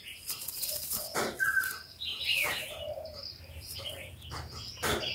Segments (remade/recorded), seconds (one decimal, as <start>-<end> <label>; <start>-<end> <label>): 0.0-2.1 recorded; 2.1-3.8 remade; 3.8-5.1 recorded